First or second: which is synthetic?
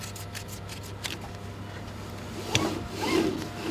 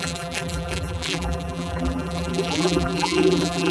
second